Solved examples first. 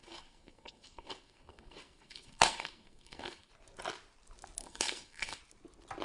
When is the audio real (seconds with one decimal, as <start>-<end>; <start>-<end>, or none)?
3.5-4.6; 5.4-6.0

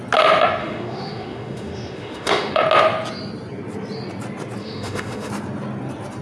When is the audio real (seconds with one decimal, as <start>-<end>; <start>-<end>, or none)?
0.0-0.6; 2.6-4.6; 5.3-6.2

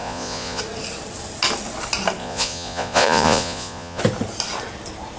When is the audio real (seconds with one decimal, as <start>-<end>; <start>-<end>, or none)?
0.6-2.2; 4.0-5.2

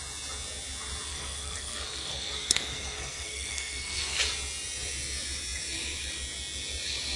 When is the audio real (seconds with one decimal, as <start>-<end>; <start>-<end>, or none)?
0.0-1.1; 4.2-7.2

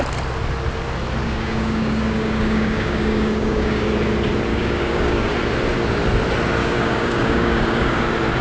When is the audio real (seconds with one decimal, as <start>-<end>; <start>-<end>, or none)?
0.0-1.2; 3.9-4.5; 5.3-6.6; 8.0-8.4